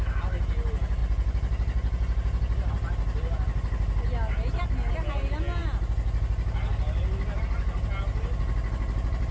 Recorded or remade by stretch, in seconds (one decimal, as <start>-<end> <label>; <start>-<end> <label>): 0.0-9.3 recorded